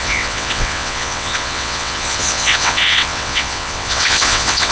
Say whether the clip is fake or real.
fake